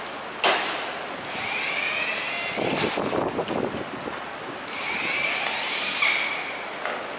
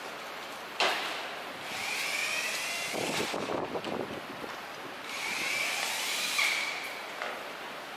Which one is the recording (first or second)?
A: first